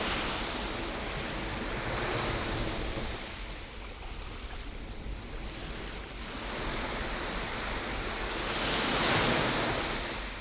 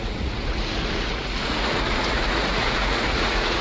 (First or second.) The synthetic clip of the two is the second